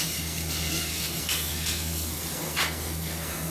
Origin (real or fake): fake